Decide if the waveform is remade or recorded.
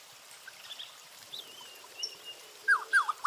remade